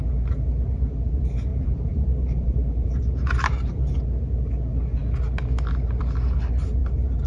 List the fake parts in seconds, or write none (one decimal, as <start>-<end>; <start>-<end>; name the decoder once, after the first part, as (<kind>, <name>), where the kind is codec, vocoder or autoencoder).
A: 1.5-3.9 (vocoder, BigVGAN v2); 6.8-7.3